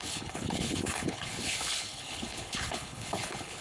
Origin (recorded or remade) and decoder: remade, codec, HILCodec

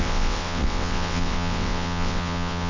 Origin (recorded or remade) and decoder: remade, vocoder, WaveNeXt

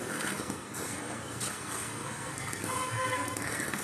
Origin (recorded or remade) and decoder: remade, codec, SNAC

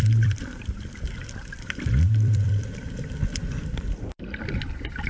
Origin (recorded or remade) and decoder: remade, vocoder, BigVGAN v2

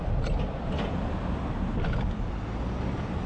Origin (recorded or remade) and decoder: recorded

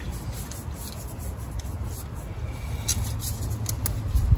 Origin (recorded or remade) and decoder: recorded